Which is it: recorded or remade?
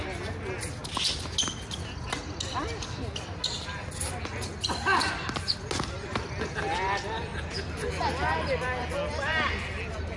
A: recorded